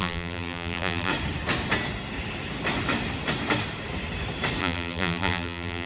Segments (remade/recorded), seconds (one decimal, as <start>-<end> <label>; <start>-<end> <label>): 0.0-1.1 remade; 1.1-4.6 recorded; 4.6-5.9 remade